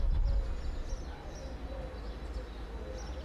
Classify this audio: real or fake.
real